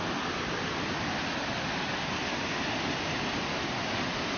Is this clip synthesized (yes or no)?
no